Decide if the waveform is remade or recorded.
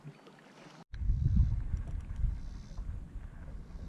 recorded